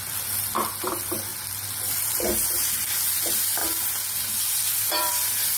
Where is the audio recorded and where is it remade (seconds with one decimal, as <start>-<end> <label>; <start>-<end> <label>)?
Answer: 0.0-3.6 remade; 3.6-4.1 recorded; 4.1-5.6 remade